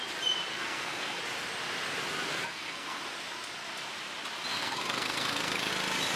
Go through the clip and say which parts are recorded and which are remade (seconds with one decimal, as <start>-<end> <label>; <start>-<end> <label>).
0.0-0.5 recorded; 0.5-1.2 remade; 1.2-2.3 recorded; 2.3-3.0 remade; 3.0-4.5 recorded; 4.5-5.7 remade; 5.7-6.2 recorded